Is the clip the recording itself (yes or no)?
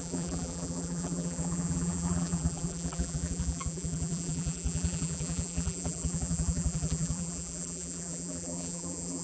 no